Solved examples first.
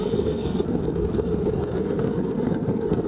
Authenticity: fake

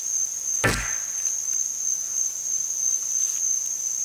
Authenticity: real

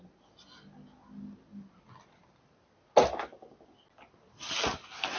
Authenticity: real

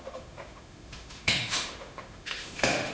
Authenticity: fake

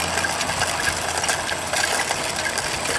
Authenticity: real